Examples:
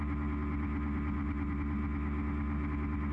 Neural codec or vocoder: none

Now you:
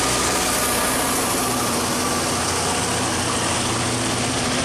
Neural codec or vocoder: none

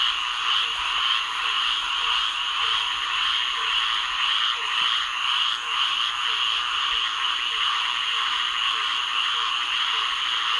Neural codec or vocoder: none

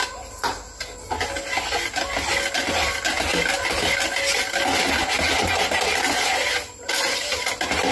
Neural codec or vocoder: none